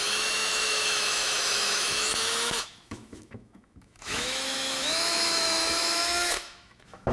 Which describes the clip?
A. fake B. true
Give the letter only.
A